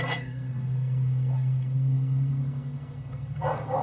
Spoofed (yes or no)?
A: yes